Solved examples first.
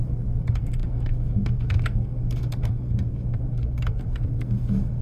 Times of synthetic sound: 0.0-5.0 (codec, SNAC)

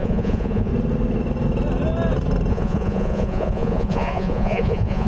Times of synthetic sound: 0.0-0.7 (vocoder, Vocos); 2.5-5.1

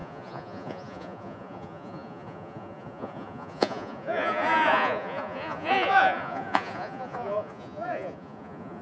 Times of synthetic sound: 0.0-8.8 (vocoder, Vocos)

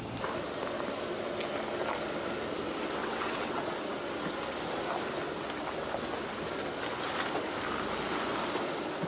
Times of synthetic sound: 3.0-3.6 (vocoder, WaveNeXt)

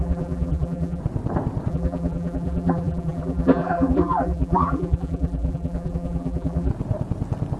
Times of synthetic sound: 0.0-1.0 (vocoder, BigVGAN v2); 1.7-6.7

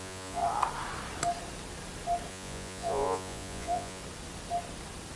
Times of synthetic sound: 0.0-0.4 (vocoder, Vocos); 2.3-4.0

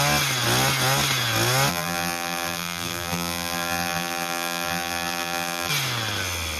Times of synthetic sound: 1.7-5.7 (vocoder, BigVGAN v2)